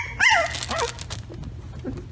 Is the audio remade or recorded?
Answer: recorded